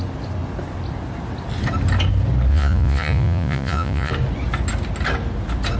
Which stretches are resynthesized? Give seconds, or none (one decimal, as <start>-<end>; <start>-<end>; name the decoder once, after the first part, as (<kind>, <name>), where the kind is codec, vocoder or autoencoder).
2.5-4.1 (vocoder, Vocos)